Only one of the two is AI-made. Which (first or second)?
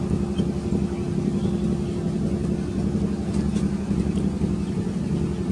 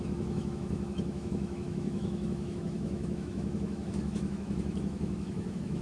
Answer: second